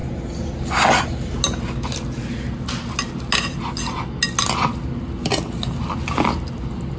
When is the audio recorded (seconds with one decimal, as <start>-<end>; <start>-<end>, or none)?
0.0-7.0